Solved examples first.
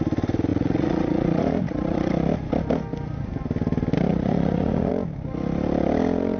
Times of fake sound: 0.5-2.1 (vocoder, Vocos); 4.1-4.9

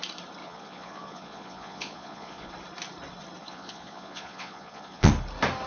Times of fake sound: 0.4-2.5 (vocoder, Vocos); 3.4-5.1

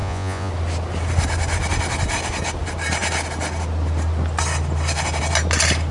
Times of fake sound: 0.0-0.5 (vocoder, Vocos)

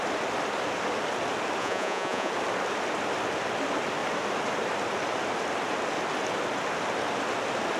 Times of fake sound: 1.6-2.3 (vocoder, Vocos)

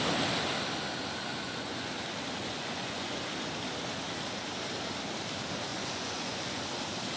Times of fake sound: 1.2-1.9 (vocoder, Vocos); 2.4-3.2; 5.7-6.6

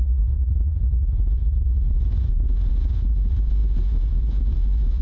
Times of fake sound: 0.0-5.0 (vocoder, Vocos)

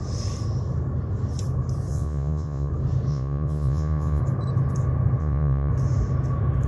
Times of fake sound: 1.9-2.7 (vocoder, Vocos); 3.1-4.2; 5.2-5.7